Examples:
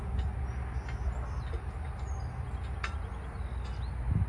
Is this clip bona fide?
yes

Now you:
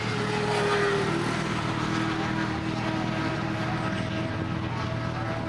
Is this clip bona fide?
yes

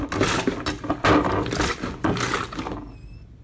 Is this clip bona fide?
yes